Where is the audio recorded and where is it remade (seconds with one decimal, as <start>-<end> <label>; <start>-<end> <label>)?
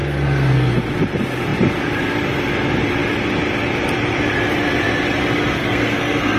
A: 0.0-0.8 remade; 0.8-5.6 recorded; 5.6-6.4 remade